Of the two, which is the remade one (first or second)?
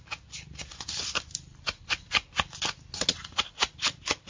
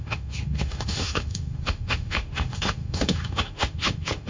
second